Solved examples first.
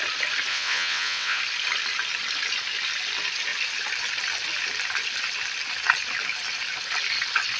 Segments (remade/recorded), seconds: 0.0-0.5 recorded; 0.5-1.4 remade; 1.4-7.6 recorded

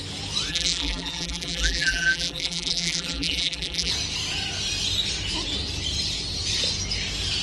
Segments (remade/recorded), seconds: 0.0-0.5 recorded; 0.5-3.9 remade; 3.9-7.4 recorded

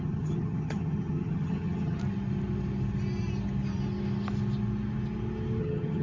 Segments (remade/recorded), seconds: 0.0-2.0 remade; 2.0-5.6 recorded; 5.6-6.0 remade

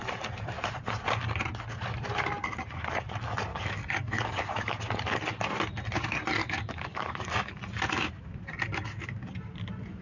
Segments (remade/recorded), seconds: 0.0-3.5 recorded; 3.5-4.8 remade; 4.8-6.4 recorded; 6.4-7.6 remade; 7.6-10.0 recorded